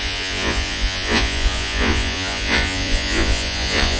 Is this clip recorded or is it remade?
remade